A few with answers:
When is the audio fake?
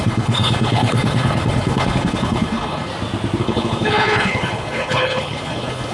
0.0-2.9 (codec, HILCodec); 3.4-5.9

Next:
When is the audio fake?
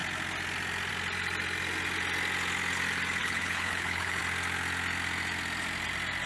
3.2-4.2 (codec, HILCodec)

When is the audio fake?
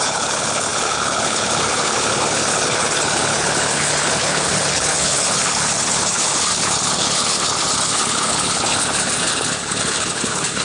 0.0-10.6 (codec, HILCodec)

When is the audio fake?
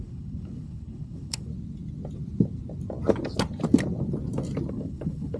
0.0-1.5 (codec, HILCodec); 4.7-5.4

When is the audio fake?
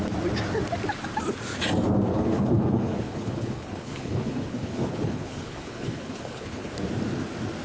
2.1-6.7 (codec, HILCodec)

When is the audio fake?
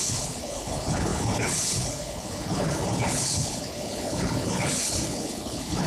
0.0-5.9 (codec, HILCodec)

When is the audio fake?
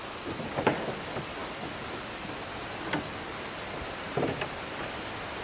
none